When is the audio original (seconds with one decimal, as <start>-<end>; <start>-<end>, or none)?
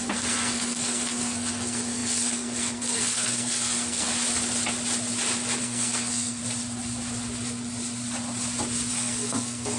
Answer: 4.1-5.6; 6.4-8.9